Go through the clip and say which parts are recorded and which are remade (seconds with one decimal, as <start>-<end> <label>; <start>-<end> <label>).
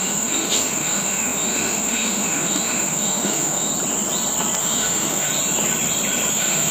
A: 0.0-3.7 remade; 3.7-4.6 recorded; 4.6-5.3 remade; 5.3-6.3 recorded; 6.3-6.7 remade